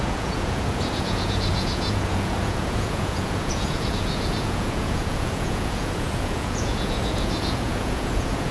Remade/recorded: remade